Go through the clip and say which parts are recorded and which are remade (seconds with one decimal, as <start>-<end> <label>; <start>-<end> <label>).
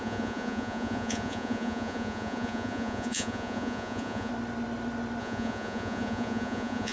0.0-4.3 remade; 4.3-5.2 recorded; 5.2-6.9 remade